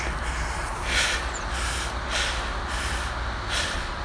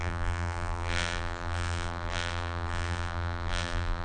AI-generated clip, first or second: second